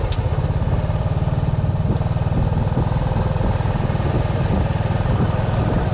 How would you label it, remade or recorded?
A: recorded